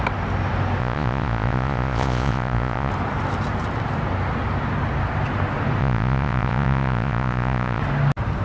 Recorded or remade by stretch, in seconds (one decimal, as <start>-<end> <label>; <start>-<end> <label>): 0.0-0.8 recorded; 0.8-2.9 remade; 2.9-5.8 recorded; 5.8-7.8 remade; 7.8-8.4 recorded